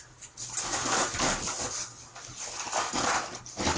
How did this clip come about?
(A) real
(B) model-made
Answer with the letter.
A